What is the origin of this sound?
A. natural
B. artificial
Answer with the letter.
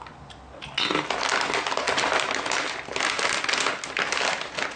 A